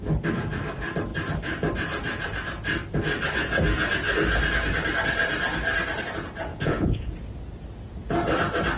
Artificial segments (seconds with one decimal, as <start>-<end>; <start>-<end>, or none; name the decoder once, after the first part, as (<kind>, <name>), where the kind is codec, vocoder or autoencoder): 6.5-7.1 (vocoder, Vocos)